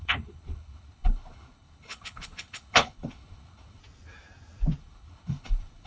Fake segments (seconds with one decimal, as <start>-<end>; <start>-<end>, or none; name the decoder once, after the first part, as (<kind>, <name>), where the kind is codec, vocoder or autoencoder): 0.0-3.8 (codec, HILCodec); 4.8-5.9